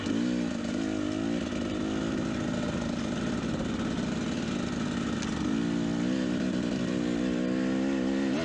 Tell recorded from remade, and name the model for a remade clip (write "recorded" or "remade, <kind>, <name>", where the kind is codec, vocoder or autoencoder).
recorded